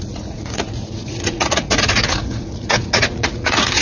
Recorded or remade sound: remade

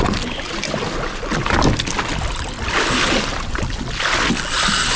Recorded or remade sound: recorded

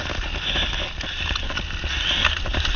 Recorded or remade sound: recorded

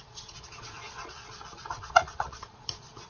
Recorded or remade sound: remade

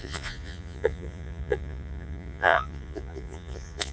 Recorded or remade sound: remade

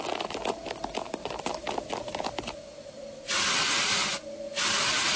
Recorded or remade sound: recorded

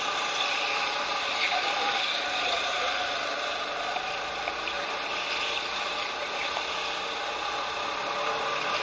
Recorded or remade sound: recorded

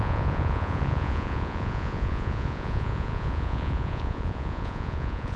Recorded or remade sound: remade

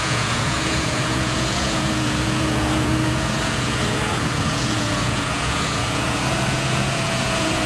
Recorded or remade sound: remade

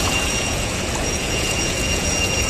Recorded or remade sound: remade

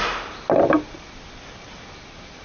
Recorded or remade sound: recorded